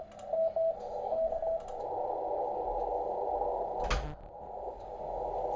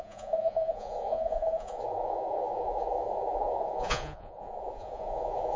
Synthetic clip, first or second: second